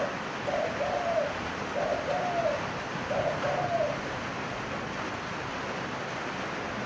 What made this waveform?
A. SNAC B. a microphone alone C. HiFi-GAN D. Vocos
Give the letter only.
B